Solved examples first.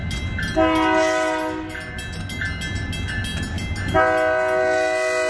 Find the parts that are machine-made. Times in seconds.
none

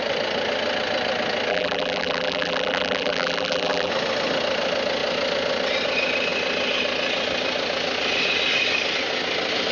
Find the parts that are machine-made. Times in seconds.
1.5-3.9 (vocoder, BigVGAN v2)

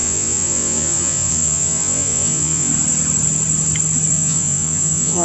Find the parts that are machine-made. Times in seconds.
0.0-2.7 (vocoder, Vocos); 4.1-5.2

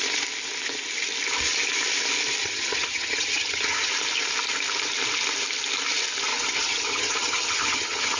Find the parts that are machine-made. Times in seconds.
2.4-3.9 (vocoder, HiFi-GAN); 6.3-8.2

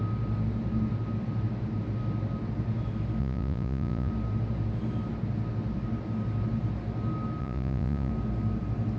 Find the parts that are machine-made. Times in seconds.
3.2-4.1 (vocoder, Vocos); 7.4-8.1

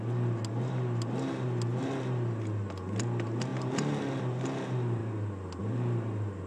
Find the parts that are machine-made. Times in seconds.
none

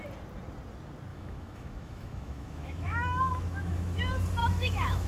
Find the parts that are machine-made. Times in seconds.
1.1-4.0 (autoencoder, DAC-VAE); 4.4-5.1

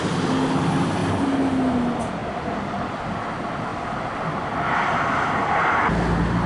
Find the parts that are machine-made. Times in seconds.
none